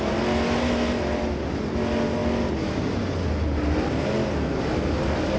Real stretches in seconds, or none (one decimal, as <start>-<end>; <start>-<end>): 0.0-5.4